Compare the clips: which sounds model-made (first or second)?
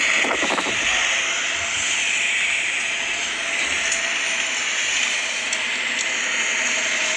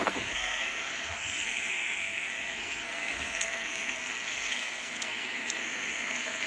second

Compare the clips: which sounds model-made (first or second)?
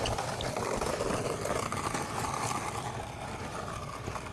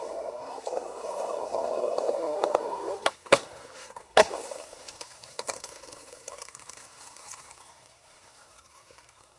second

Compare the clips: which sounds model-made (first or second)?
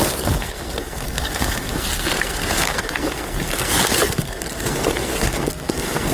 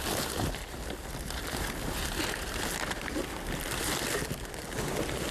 first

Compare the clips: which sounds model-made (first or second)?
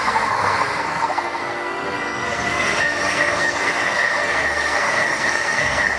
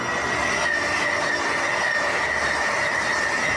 first